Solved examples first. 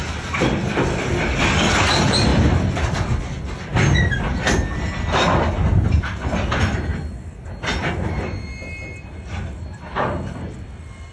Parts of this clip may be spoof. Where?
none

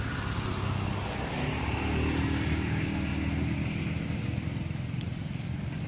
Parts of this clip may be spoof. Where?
none